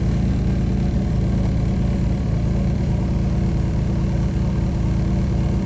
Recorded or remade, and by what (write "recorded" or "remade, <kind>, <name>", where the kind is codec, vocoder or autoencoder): recorded